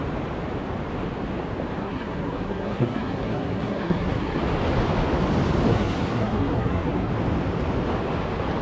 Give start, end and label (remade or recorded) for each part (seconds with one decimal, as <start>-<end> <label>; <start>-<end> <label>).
0.0-1.8 recorded; 1.8-4.4 remade; 4.4-5.7 recorded; 5.7-7.1 remade; 7.1-8.6 recorded

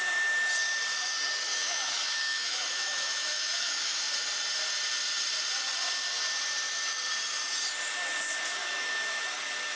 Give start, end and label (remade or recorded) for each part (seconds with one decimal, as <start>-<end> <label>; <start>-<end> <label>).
0.0-1.5 recorded; 1.5-4.0 remade; 4.0-8.6 recorded; 8.6-9.2 remade; 9.2-9.8 recorded

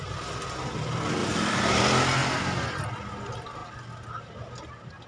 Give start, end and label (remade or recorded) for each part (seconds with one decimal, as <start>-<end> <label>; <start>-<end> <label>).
0.0-1.2 recorded; 1.2-1.8 remade; 1.8-2.2 recorded; 2.2-2.8 remade; 2.8-5.1 recorded

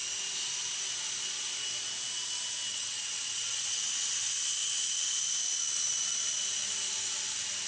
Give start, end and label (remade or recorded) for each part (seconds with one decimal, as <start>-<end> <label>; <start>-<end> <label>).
0.0-2.7 recorded; 2.7-4.1 remade; 4.1-4.6 recorded; 4.6-5.2 remade; 5.2-7.7 recorded

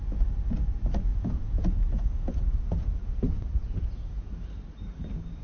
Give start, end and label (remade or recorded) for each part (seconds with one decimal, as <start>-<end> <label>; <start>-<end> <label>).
0.0-1.1 recorded; 1.1-4.3 remade; 4.3-5.4 recorded

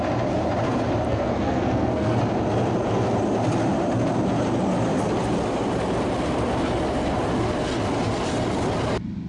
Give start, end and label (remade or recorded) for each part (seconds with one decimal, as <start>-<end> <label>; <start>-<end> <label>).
0.0-1.1 recorded; 1.1-2.2 remade; 2.2-9.3 recorded

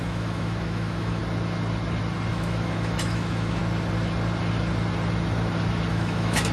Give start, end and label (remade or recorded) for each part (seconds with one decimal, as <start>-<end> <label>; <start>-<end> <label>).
0.0-1.2 remade; 1.2-2.3 recorded; 2.3-3.6 remade; 3.6-5.9 recorded; 5.9-6.5 remade